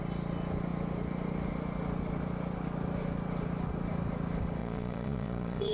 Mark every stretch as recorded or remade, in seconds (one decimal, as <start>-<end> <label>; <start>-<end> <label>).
0.0-4.6 recorded; 4.6-5.7 remade